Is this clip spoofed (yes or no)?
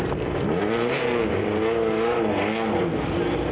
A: no